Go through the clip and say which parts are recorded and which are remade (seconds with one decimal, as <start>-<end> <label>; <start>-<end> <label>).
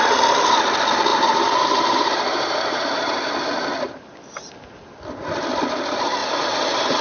0.0-1.1 recorded; 1.1-3.3 remade; 3.3-6.2 recorded; 6.2-7.0 remade